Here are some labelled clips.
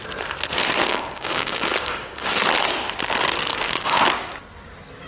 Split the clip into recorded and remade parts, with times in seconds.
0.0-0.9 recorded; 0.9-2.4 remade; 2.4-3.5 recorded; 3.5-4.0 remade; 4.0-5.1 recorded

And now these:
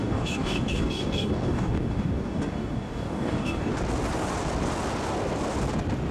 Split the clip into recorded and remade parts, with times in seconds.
0.0-3.7 remade; 3.7-6.1 recorded

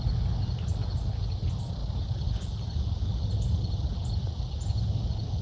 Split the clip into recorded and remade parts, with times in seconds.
0.0-5.4 recorded